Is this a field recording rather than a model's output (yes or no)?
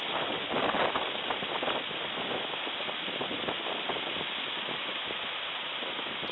yes